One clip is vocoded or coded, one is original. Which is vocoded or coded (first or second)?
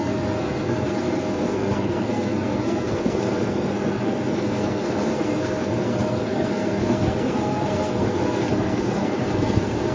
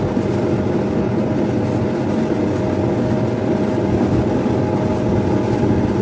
first